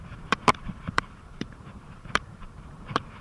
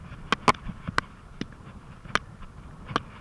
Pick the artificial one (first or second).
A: first